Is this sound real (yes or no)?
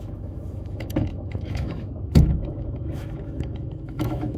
no